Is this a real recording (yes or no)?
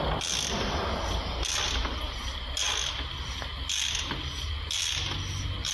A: yes